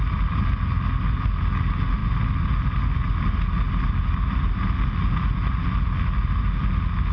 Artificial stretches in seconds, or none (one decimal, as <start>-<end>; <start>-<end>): none